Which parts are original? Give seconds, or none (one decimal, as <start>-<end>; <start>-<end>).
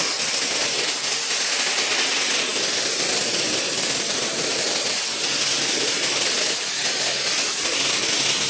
0.0-8.5